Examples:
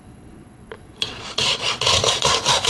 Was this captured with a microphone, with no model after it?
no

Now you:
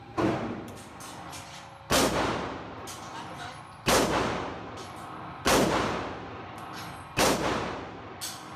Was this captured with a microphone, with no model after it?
yes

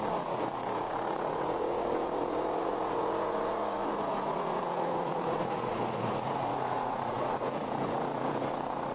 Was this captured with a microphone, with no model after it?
no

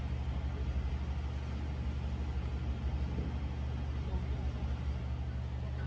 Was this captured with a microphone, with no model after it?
yes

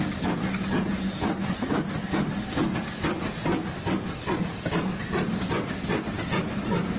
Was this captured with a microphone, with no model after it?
yes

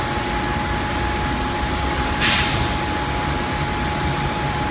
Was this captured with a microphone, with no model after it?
yes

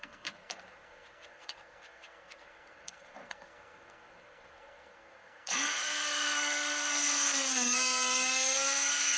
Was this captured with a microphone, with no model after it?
no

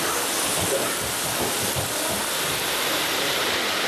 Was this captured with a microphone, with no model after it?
no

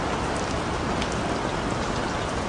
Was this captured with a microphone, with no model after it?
yes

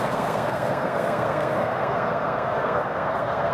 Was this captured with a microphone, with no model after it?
no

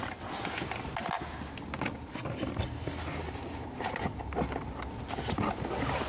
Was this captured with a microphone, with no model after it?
yes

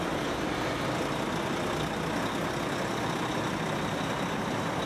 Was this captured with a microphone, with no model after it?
yes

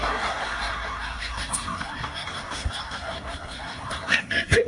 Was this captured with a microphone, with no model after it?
no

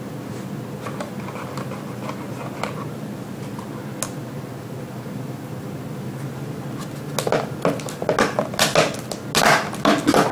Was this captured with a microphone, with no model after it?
yes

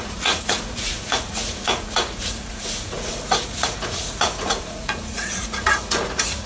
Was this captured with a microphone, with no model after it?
no